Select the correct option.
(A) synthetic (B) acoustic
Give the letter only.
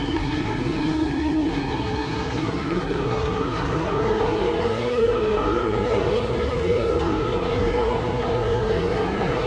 A